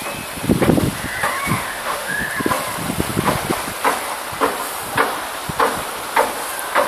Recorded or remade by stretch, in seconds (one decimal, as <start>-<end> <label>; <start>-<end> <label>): 0.0-1.5 recorded; 1.5-2.3 remade; 2.3-6.9 recorded